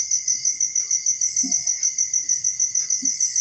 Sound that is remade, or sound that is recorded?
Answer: recorded